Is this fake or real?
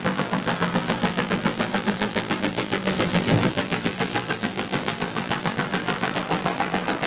fake